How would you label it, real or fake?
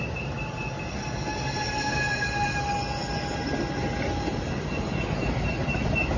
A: real